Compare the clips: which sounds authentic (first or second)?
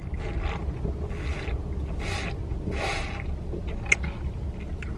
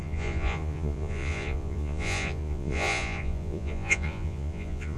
first